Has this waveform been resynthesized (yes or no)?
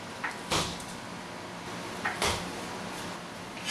no